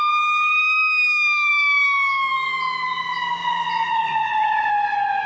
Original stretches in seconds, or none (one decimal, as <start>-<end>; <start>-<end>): 0.0-3.4; 4.7-5.3